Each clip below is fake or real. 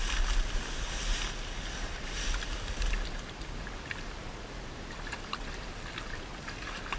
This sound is real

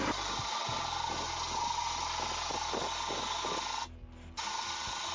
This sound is real